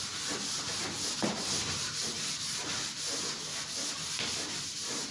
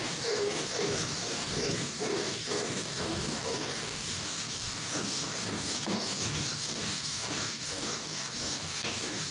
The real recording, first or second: first